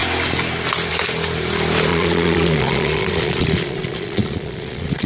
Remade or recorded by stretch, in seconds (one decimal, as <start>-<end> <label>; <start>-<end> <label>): 0.0-1.9 recorded; 1.9-5.1 remade